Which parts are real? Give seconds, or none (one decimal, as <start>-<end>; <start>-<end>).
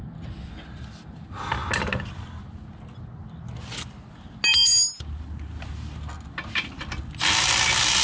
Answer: 0.0-8.0